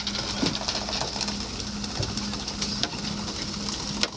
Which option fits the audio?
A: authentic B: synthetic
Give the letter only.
A